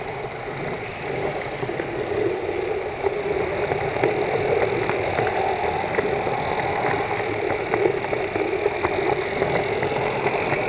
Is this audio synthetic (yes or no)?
no